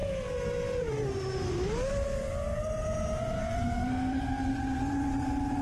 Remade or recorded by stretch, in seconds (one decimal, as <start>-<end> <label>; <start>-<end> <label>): 0.0-3.4 recorded; 3.4-4.5 remade; 4.5-5.6 recorded